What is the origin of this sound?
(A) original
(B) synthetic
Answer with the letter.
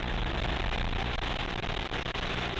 A